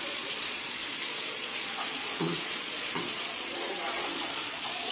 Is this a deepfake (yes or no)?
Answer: yes